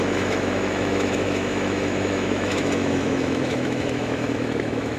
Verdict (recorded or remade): remade